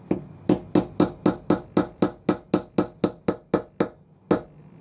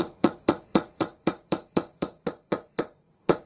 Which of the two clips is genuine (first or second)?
first